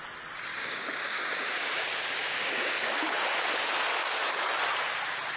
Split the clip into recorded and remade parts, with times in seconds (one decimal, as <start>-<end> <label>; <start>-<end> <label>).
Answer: 0.0-0.5 recorded; 0.5-3.0 remade; 3.0-4.0 recorded; 4.0-4.5 remade; 4.5-5.4 recorded

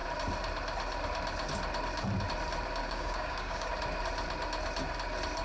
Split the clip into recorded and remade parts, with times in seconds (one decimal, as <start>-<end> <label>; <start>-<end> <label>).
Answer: 0.0-2.8 recorded; 2.8-3.7 remade; 3.7-5.4 recorded

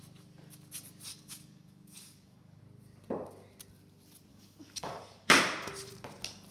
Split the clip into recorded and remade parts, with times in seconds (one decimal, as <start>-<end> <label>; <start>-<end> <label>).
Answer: 0.0-1.1 recorded; 1.1-2.6 remade; 2.6-4.3 recorded; 4.3-5.4 remade; 5.4-6.5 recorded